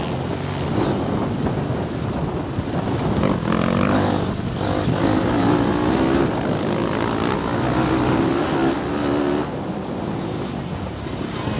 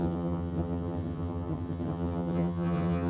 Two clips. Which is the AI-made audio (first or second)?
second